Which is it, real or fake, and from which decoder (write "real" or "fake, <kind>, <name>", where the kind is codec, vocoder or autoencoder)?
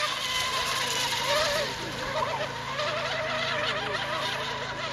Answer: real